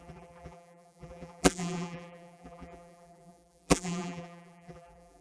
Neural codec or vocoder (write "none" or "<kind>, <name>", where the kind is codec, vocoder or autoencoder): vocoder, BigVGAN v2